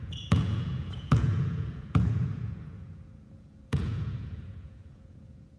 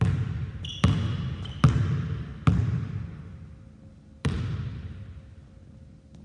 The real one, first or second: second